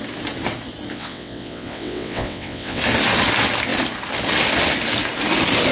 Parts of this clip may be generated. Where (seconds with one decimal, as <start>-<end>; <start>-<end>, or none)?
0.9-2.8